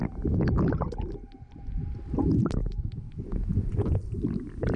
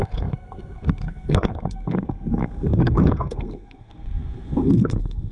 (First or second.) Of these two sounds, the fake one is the second